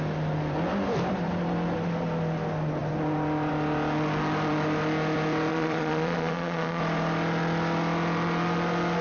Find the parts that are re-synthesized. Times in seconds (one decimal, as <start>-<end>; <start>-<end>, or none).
5.5-6.8